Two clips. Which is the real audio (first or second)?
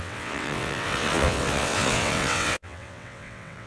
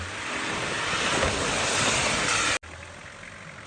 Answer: second